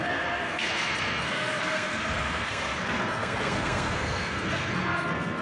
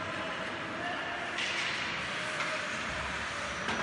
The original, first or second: second